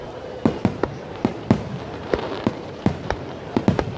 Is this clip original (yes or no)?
no